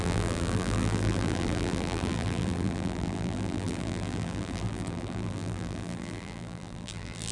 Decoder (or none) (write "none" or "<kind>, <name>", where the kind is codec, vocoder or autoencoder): vocoder, BigVGAN v2